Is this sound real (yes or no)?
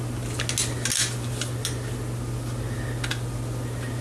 yes